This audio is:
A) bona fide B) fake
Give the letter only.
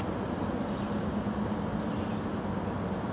A